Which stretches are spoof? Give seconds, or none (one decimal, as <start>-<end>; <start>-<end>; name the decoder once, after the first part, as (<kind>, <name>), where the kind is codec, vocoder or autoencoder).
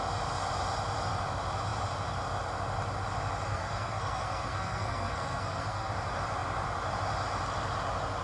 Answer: 3.5-5.9 (codec, SNAC)